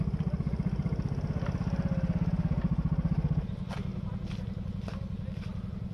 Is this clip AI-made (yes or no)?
no